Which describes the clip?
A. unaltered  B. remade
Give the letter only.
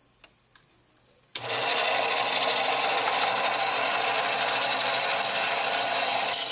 A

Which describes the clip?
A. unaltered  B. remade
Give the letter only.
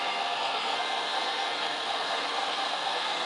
B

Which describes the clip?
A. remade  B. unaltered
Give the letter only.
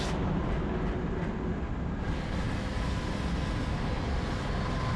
B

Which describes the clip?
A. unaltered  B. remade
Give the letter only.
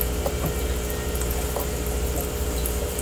A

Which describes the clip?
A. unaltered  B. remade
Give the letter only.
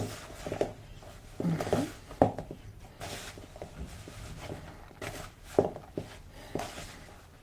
A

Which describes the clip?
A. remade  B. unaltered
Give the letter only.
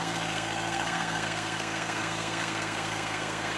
A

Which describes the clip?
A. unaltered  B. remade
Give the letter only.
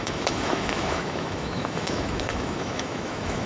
B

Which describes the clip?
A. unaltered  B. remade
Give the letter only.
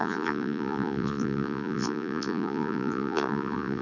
B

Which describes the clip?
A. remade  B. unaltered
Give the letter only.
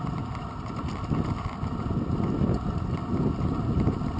B